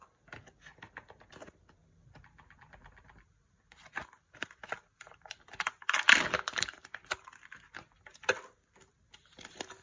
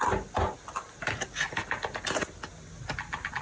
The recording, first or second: second